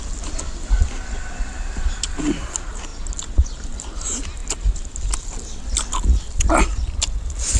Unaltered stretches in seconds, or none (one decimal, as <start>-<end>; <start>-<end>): 0.0-7.6